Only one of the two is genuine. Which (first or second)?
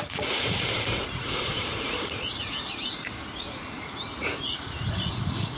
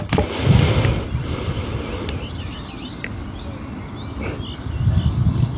second